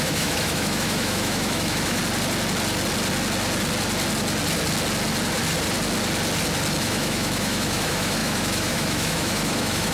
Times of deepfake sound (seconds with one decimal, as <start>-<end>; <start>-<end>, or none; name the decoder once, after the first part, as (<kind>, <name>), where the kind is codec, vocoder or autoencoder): 0.0-2.0 (autoencoder, DAC-VAE); 6.8-9.9

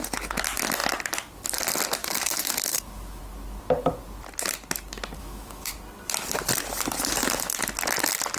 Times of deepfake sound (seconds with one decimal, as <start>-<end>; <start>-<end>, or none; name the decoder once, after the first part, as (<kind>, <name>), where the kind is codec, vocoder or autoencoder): 2.0-3.2 (autoencoder, DAC-VAE); 5.2-5.7

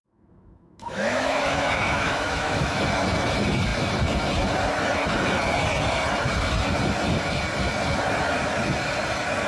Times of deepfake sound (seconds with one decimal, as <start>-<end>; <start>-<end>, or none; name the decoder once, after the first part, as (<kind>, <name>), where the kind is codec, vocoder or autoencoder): 0.0-2.8 (autoencoder, DAC-VAE)

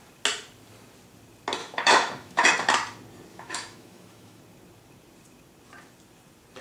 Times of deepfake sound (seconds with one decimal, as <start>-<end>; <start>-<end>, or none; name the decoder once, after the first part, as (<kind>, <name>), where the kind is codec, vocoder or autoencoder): 1.6-2.5 (autoencoder, DAC-VAE); 3.3-4.4

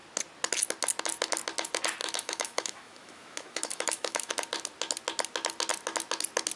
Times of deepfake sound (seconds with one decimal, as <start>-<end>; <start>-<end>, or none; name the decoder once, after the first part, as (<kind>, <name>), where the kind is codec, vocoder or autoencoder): 2.0-4.3 (autoencoder, DAC-VAE)